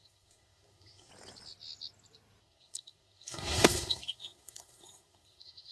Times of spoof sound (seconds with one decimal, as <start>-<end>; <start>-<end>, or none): 0.0-1.1; 2.4-5.7